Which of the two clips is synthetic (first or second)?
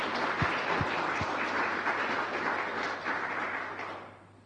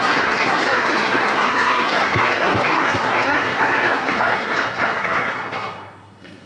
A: second